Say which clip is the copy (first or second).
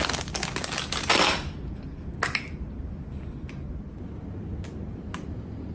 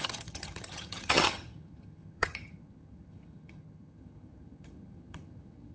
second